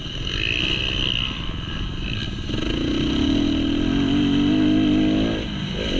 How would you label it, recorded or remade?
recorded